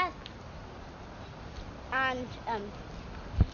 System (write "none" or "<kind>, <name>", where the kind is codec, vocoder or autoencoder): none